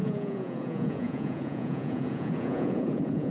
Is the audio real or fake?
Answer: fake